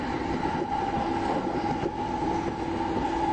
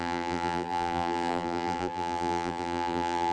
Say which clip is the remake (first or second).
second